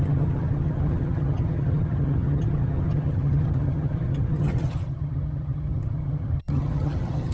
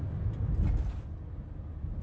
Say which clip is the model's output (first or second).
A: first